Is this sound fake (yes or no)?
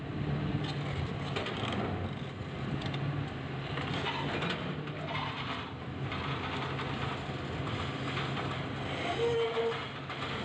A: no